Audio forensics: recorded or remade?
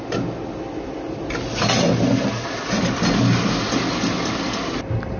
recorded